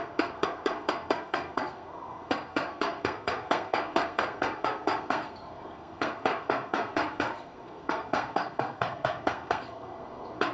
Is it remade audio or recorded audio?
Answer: remade